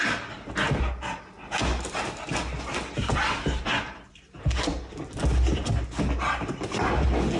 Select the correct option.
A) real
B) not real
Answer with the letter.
A